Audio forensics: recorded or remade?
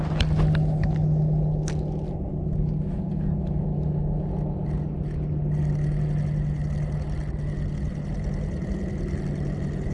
recorded